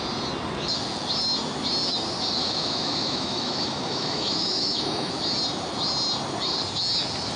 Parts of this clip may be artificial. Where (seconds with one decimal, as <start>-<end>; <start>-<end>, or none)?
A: 2.4-5.1